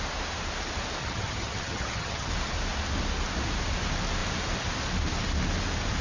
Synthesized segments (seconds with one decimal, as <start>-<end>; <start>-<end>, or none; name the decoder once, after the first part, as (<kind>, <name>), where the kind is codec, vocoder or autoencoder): 1.0-2.3 (vocoder, HiFi-GAN)